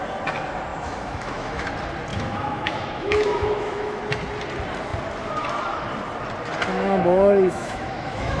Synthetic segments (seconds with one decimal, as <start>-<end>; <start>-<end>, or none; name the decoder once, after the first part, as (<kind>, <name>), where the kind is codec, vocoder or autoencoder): 0.7-1.7 (autoencoder, DAC-VAE); 2.1-4.0; 6.7-8.4